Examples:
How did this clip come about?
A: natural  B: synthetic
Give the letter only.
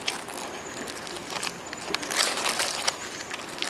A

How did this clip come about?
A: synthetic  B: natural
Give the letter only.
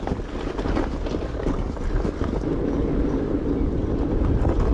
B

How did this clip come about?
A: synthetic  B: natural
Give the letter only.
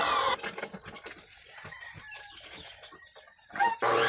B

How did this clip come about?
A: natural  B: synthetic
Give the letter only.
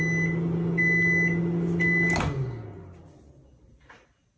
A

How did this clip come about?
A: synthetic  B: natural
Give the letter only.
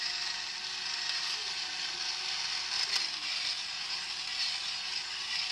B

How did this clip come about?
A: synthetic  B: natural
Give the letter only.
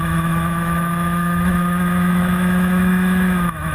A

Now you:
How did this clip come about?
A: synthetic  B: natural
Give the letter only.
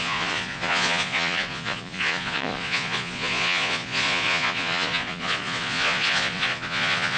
A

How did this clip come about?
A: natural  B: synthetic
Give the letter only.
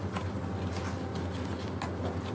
A